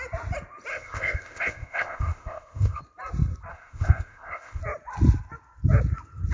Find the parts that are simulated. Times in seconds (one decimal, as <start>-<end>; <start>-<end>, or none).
0.7-2.8; 3.5-4.6